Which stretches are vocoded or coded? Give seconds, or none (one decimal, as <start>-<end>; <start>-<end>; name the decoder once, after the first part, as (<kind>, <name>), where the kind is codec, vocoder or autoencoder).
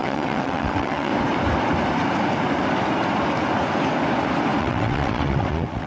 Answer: 0.0-1.1 (vocoder, WaveNeXt); 4.6-5.9